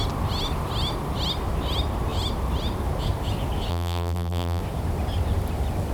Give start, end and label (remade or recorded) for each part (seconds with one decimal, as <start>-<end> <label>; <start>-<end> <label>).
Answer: 0.0-3.7 recorded; 3.7-4.6 remade; 4.6-5.9 recorded